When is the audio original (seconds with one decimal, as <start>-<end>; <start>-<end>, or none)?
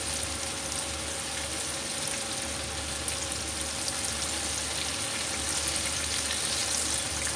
0.0-7.4